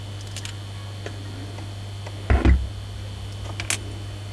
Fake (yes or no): no